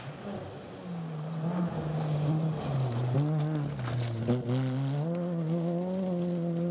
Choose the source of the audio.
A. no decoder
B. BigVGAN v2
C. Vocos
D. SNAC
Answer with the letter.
A